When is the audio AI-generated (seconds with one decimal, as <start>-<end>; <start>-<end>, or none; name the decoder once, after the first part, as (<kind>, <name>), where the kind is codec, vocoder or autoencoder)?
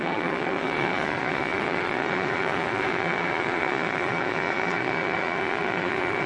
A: 0.0-6.3 (vocoder, Vocos)